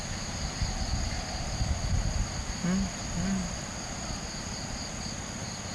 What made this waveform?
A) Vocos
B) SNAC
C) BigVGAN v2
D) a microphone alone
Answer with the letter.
D